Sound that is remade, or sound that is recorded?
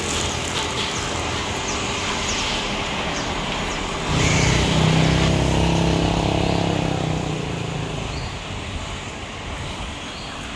recorded